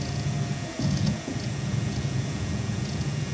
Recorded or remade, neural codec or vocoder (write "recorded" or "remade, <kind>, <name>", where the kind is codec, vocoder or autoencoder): remade, vocoder, Vocos